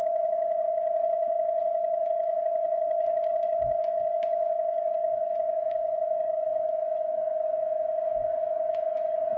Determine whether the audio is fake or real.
fake